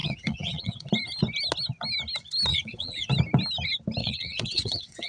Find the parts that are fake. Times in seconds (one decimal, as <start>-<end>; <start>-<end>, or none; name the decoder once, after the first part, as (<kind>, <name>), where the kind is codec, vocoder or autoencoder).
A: 0.0-0.9 (vocoder, WaveNeXt); 2.5-3.1; 4.0-5.1